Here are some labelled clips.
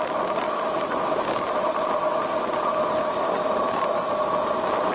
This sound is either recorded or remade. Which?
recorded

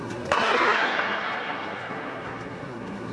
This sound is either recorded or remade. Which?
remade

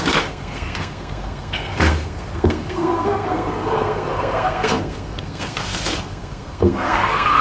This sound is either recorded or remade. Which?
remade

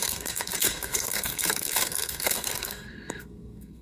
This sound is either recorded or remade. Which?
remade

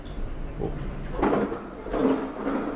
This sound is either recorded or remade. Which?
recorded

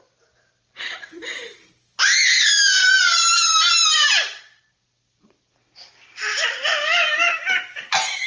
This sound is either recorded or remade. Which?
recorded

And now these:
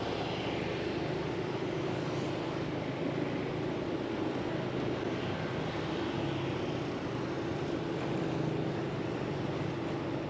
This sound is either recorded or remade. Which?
recorded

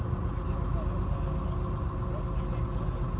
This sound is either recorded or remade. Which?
recorded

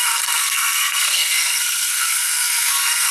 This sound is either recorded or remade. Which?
remade